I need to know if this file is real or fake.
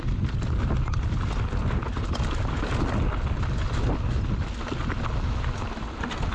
real